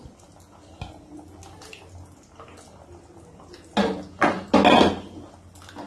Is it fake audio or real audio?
real